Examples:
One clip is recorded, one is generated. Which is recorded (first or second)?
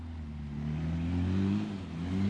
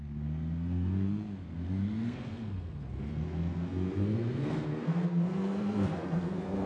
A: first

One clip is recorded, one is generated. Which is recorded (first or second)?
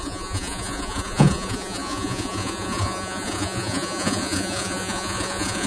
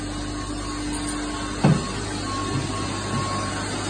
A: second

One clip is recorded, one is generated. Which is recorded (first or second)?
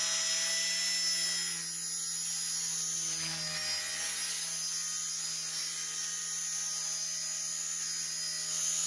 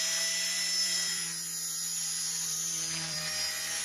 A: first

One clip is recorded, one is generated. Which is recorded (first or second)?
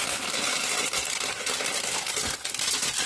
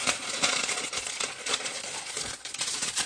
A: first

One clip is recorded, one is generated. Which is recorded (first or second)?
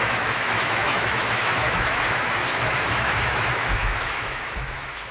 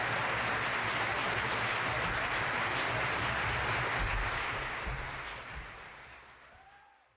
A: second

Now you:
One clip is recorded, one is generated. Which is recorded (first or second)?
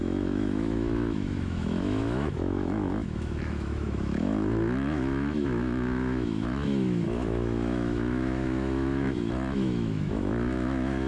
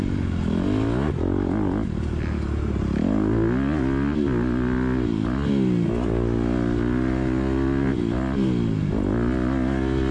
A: second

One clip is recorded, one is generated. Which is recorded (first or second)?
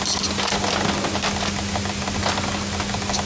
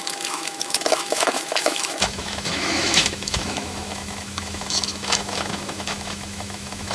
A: first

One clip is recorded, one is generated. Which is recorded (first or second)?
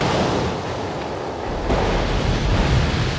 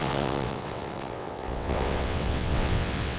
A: first